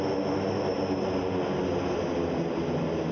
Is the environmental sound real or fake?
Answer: real